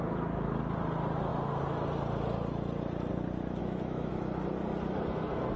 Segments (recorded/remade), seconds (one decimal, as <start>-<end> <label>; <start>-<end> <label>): 0.0-3.6 recorded; 3.6-4.1 remade; 4.1-5.6 recorded